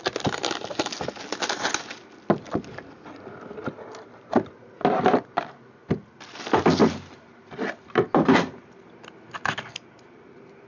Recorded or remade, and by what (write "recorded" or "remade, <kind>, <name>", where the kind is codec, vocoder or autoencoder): recorded